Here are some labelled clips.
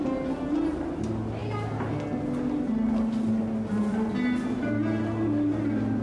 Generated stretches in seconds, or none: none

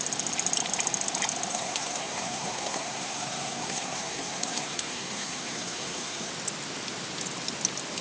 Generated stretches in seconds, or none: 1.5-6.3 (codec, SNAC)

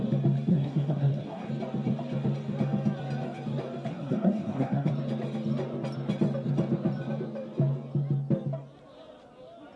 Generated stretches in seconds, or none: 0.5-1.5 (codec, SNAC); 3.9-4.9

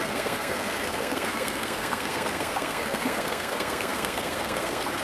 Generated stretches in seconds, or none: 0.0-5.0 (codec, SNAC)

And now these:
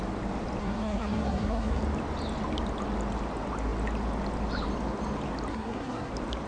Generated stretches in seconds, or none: 0.6-1.8 (codec, SNAC); 5.5-6.1

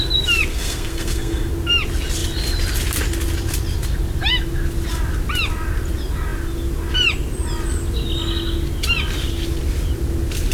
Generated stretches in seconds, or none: 0.5-1.5 (codec, SNAC)

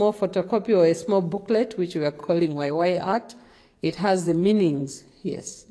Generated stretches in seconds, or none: 2.2-5.7 (codec, SNAC)